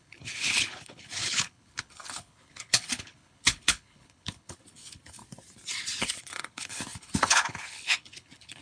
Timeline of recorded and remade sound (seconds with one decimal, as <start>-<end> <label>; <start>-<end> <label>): 0.0-5.2 remade; 5.2-6.0 recorded; 6.0-8.6 remade